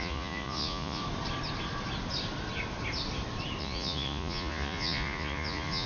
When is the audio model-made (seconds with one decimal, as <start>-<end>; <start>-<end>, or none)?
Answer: 0.0-1.0; 3.6-5.9